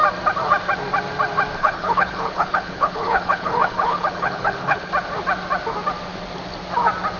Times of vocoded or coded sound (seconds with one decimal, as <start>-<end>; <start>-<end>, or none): 1.6-4.9